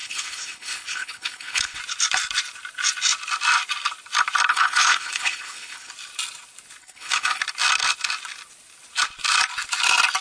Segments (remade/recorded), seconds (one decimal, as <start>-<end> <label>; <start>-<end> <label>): 0.0-1.8 remade; 1.8-4.5 recorded; 4.5-5.9 remade; 5.9-6.8 recorded; 6.8-7.4 remade; 7.4-10.2 recorded